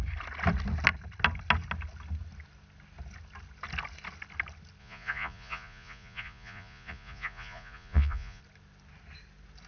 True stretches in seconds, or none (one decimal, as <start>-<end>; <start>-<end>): 0.0-4.8; 8.4-9.7